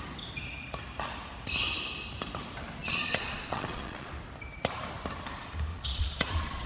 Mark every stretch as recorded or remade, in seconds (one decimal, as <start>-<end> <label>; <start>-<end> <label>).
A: 0.0-2.8 recorded; 2.8-4.1 remade; 4.1-5.7 recorded; 5.7-6.7 remade